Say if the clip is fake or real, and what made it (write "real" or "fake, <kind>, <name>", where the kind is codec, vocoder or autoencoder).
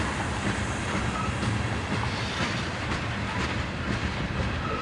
real